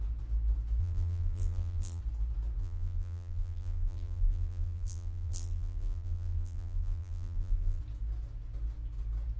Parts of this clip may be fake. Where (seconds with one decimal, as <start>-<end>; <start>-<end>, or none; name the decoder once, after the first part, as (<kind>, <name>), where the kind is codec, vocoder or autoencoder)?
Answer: 0.8-2.0 (vocoder, BigVGAN v2); 2.6-7.8